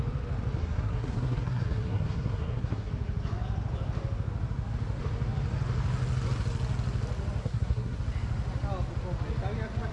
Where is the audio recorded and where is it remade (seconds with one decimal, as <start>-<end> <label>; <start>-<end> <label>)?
0.0-0.6 recorded; 0.6-2.9 remade; 2.9-7.4 recorded; 7.4-8.0 remade; 8.0-9.9 recorded